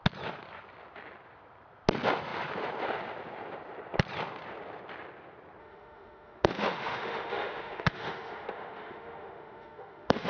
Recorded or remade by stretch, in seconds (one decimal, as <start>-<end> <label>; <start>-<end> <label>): 0.0-5.6 recorded; 5.6-10.3 remade